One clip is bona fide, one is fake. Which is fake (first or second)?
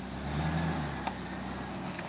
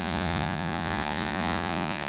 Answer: second